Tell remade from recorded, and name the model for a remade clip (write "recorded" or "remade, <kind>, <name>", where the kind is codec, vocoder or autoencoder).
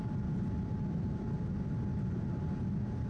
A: recorded